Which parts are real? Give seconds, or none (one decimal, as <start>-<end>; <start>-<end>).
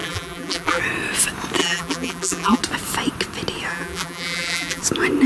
0.8-1.6; 2.6-3.7; 4.8-5.3